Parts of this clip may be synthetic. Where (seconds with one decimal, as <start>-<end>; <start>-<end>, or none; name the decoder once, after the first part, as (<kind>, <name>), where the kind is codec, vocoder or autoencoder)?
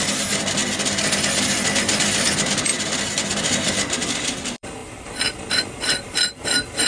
0.0-0.6 (vocoder, BigVGAN v2); 1.8-2.7; 3.5-4.8; 5.5-6.9